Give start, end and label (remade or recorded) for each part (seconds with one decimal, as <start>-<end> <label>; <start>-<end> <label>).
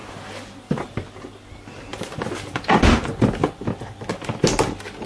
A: 0.0-5.1 recorded